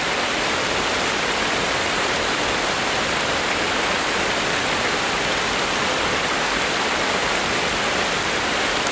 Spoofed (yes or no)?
yes